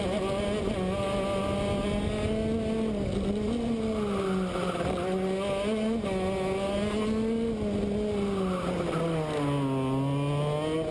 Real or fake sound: real